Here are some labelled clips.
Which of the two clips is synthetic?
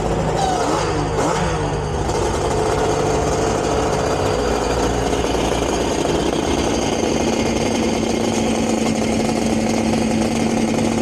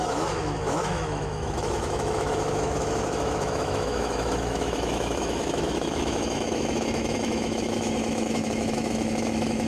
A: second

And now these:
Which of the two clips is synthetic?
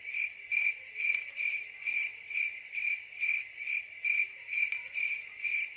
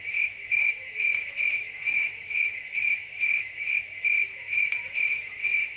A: second